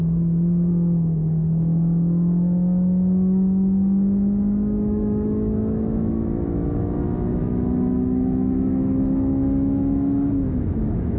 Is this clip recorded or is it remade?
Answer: remade